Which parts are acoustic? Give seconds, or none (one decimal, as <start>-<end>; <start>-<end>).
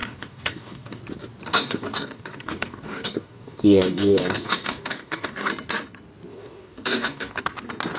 1.0-1.5; 5.5-6.3; 7.4-8.0